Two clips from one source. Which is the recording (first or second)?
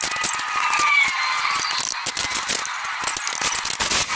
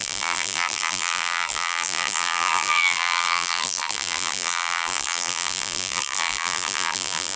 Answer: first